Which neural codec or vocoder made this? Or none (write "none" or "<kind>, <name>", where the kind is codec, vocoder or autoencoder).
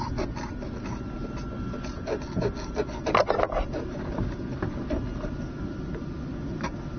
none